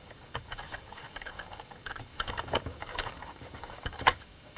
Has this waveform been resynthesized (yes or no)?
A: yes